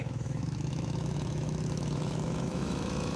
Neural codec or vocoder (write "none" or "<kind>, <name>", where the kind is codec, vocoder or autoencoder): autoencoder, DAC-VAE